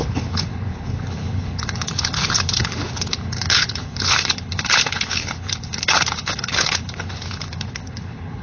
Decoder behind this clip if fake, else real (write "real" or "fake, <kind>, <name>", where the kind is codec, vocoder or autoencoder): fake, codec, HILCodec